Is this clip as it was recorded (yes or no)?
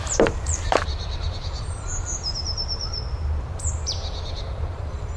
no